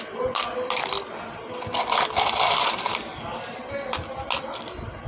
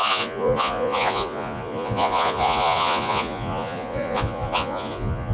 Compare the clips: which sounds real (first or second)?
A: first